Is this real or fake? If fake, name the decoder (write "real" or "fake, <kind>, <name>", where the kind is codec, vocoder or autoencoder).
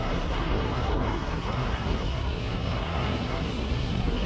fake, codec, SNAC